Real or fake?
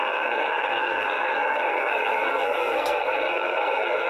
fake